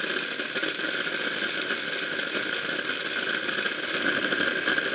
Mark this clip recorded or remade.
recorded